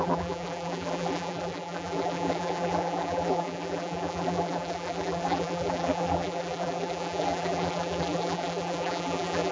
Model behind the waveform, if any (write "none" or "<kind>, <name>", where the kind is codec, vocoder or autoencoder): vocoder, BigVGAN v2